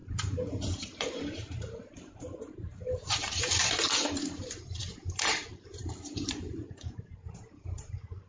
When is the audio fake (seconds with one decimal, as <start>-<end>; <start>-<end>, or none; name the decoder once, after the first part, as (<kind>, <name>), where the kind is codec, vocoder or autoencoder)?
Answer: 0.0-8.3 (vocoder, BigVGAN v2)